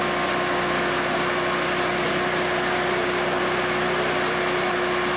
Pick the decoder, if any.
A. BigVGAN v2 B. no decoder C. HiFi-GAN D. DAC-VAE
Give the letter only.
B